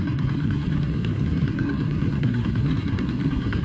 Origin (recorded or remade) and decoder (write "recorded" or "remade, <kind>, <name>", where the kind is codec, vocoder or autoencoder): remade, codec, SNAC